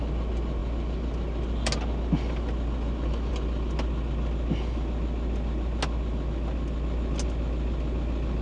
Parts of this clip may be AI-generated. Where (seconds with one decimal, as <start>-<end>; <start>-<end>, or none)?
none